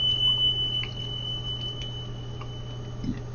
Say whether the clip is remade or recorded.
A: recorded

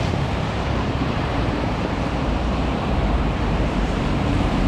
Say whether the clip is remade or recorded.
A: remade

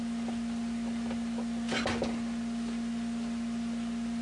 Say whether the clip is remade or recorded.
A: recorded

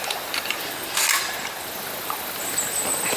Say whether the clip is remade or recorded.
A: recorded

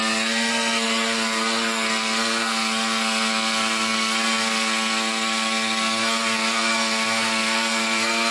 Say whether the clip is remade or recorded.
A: remade